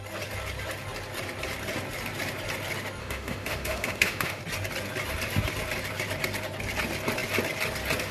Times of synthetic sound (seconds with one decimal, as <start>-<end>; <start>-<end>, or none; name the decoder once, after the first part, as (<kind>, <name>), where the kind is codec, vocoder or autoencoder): 3.0-4.4 (autoencoder, DAC-VAE)